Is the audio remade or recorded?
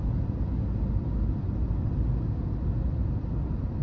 recorded